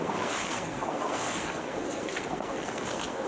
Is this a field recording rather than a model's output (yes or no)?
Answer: no